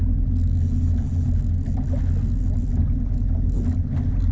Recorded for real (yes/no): yes